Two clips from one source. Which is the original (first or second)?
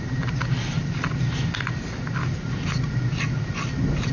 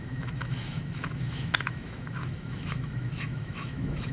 first